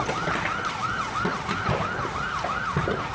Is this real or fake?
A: real